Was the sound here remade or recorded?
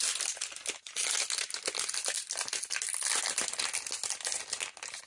recorded